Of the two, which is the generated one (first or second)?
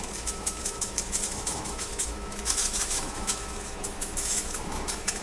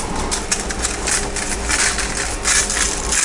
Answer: first